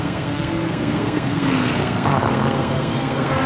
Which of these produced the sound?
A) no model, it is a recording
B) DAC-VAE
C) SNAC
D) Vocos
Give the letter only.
C